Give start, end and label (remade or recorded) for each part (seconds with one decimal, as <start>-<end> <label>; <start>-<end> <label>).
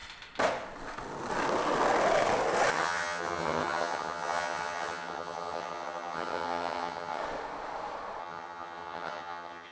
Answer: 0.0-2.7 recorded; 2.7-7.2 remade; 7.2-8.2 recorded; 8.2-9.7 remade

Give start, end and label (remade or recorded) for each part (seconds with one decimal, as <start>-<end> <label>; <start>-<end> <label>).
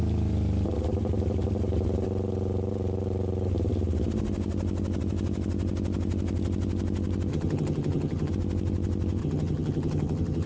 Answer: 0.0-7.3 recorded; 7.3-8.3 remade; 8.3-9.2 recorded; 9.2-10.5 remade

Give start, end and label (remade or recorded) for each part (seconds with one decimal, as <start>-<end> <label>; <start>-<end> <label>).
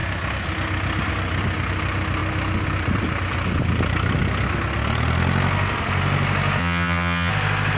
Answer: 0.0-6.6 recorded; 6.6-7.3 remade; 7.3-7.8 recorded